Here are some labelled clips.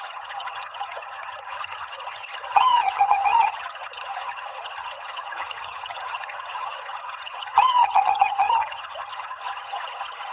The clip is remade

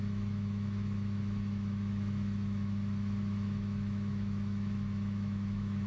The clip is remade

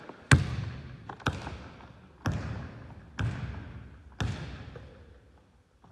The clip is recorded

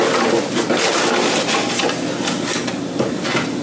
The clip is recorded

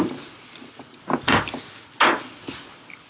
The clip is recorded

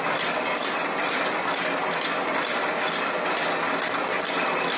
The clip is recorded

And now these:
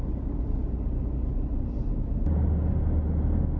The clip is recorded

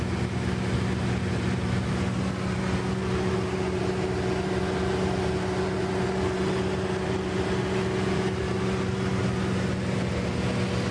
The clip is recorded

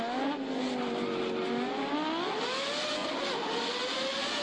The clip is recorded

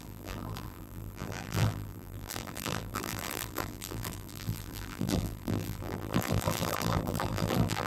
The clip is remade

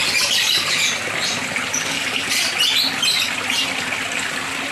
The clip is recorded